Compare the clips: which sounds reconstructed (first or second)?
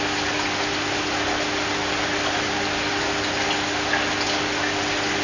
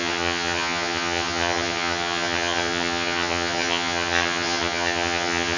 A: second